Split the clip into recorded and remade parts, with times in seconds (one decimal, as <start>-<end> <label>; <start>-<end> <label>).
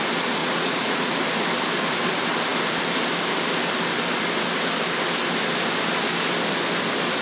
0.0-0.4 recorded; 0.4-1.2 remade; 1.2-7.2 recorded